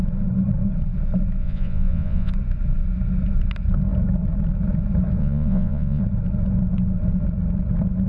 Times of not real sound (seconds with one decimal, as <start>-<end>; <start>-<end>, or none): 1.4-2.3; 5.2-6.0